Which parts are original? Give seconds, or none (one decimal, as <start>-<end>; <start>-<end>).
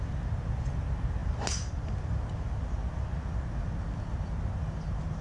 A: 0.0-5.2